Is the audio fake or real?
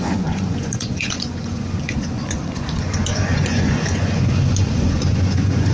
fake